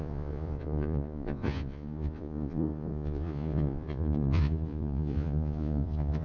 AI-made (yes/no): yes